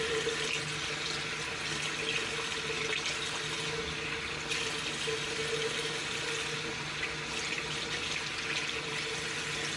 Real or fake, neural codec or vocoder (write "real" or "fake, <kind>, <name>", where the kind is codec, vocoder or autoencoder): real